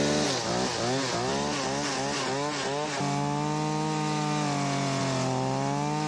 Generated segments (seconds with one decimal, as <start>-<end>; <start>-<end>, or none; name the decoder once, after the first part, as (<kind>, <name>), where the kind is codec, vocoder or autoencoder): none